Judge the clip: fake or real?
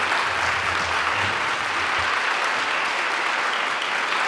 real